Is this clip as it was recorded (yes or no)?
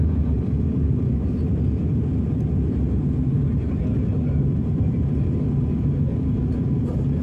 no